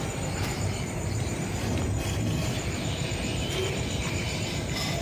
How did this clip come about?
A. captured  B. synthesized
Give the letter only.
B